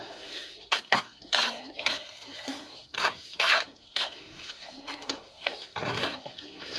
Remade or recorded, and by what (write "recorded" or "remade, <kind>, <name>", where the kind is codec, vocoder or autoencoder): remade, codec, SNAC